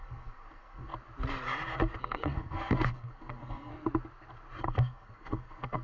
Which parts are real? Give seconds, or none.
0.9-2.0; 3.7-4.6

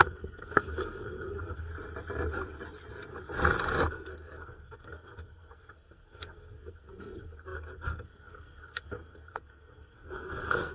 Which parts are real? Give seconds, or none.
1.7-3.9

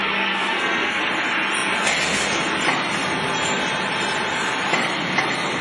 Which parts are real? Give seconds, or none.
1.0-5.6